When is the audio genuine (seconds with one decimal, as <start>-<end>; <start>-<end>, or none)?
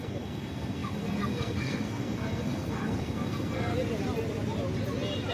3.7-5.3